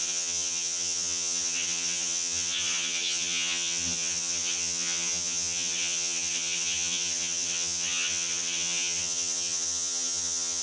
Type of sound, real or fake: fake